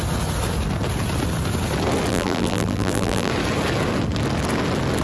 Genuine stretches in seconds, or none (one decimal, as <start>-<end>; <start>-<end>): 0.0-2.1; 3.3-5.0